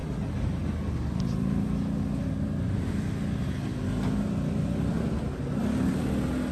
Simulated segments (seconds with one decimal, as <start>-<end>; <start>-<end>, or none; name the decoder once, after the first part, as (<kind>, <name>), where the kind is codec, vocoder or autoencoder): none